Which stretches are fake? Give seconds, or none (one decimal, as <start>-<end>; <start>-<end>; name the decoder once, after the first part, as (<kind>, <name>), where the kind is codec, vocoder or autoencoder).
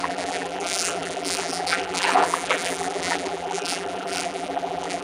0.0-5.0 (vocoder, BigVGAN v2)